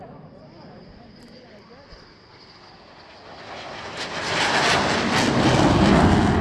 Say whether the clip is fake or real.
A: real